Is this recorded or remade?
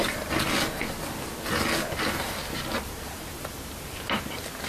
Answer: recorded